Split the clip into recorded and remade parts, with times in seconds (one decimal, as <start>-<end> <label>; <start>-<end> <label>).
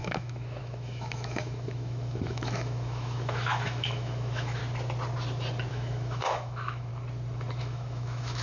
0.0-4.6 remade; 4.6-5.7 recorded; 5.7-6.9 remade; 6.9-7.6 recorded; 7.6-8.4 remade